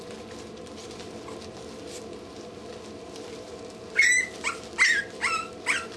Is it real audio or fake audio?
real